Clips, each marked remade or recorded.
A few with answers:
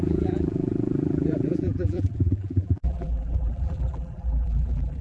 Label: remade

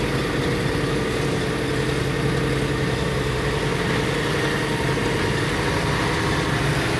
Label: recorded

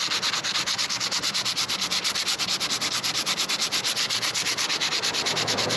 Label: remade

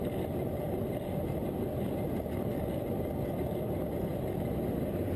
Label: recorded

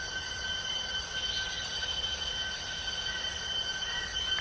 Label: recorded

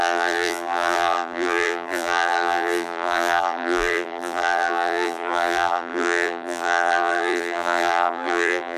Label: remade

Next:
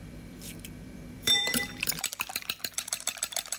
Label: remade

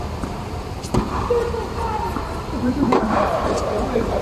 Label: remade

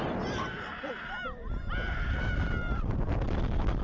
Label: remade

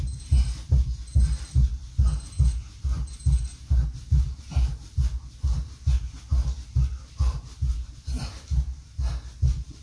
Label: recorded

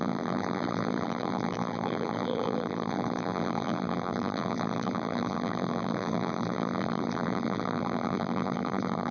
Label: remade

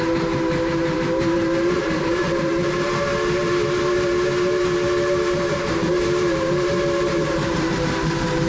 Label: remade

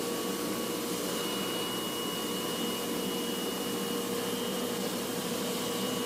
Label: recorded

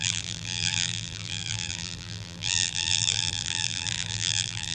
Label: remade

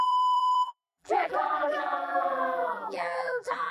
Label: remade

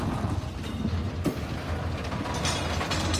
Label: remade